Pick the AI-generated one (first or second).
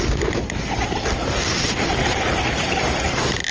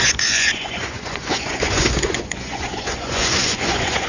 second